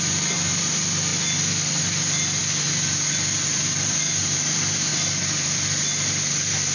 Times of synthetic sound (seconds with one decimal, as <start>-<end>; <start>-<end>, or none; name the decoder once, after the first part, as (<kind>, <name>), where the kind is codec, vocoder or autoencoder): 0.0-1.1 (vocoder, BigVGAN v2); 1.8-2.4; 3.5-6.7